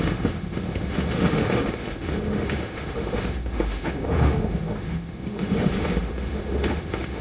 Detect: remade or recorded remade